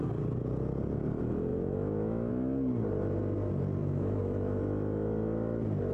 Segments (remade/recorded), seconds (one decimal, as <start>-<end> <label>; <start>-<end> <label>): 0.0-1.5 recorded; 1.5-2.3 remade; 2.3-3.8 recorded; 3.8-4.6 remade; 4.6-5.9 recorded